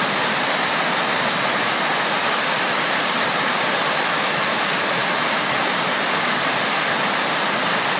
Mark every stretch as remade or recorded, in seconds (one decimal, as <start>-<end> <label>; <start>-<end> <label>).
0.0-8.0 recorded